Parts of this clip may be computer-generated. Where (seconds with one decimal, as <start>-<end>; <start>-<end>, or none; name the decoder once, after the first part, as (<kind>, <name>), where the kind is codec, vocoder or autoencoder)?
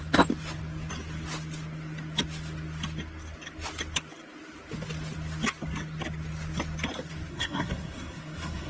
7.3-8.7 (codec, SNAC)